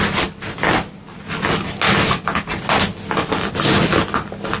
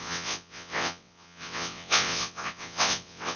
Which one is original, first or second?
first